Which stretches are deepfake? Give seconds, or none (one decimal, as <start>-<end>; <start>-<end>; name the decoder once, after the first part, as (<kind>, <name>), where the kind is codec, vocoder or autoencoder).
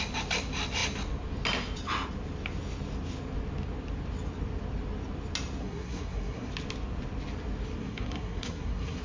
5.6-6.5 (codec, SNAC); 7.8-9.0